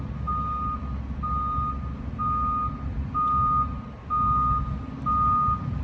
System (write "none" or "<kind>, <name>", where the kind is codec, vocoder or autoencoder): none